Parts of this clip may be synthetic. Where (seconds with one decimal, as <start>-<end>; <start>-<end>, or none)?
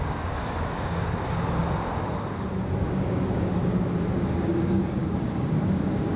0.0-1.6; 2.8-6.2